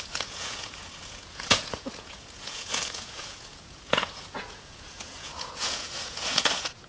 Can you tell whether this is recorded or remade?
remade